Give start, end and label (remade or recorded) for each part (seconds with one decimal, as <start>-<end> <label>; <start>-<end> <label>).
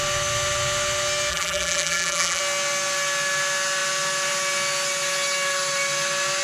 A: 0.0-1.3 recorded; 1.3-2.4 remade; 2.4-6.4 recorded